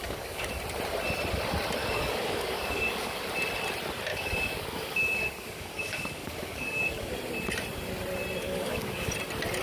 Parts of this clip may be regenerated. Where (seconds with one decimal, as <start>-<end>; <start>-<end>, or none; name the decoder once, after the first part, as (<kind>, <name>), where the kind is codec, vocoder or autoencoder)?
0.0-0.5 (codec, DAC); 1.8-3.2; 4.1-7.1; 8.4-9.1